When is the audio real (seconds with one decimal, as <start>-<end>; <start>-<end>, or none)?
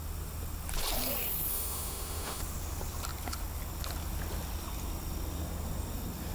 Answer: 0.0-1.5; 2.4-6.3